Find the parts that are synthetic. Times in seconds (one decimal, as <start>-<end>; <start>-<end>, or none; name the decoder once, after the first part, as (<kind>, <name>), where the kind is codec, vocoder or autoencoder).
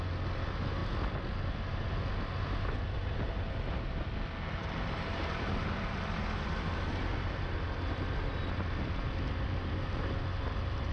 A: 4.6-6.1 (vocoder, BigVGAN v2)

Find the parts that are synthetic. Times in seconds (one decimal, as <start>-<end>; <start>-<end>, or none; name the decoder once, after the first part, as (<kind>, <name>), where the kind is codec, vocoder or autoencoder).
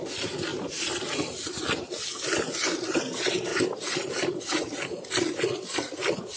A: none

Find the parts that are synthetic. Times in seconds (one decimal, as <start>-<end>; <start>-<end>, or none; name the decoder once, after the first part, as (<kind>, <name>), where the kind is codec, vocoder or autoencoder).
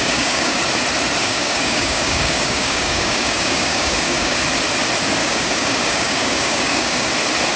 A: 0.0-0.6 (codec, DAC); 1.2-4.4; 5.2-7.1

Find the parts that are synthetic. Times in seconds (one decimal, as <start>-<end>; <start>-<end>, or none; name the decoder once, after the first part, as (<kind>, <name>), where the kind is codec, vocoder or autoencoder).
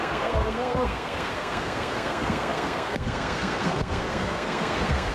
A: 0.0-5.1 (codec, SNAC)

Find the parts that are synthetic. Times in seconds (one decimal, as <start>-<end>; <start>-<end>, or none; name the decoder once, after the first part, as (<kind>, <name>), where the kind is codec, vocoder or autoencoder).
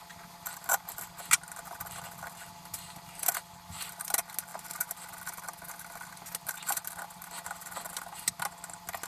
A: none